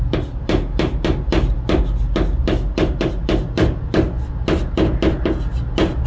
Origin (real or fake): real